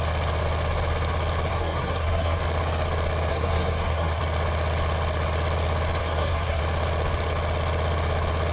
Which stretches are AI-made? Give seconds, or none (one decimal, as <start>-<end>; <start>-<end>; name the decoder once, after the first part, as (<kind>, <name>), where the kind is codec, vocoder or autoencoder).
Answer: 1.5-2.4 (codec, SNAC); 3.3-4.2; 6.0-6.6